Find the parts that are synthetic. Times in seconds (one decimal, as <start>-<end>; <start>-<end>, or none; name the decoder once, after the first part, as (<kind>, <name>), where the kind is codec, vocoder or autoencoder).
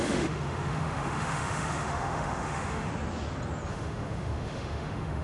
0.0-2.9 (autoencoder, DAC-VAE); 3.7-5.2